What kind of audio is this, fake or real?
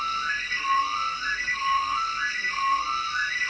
fake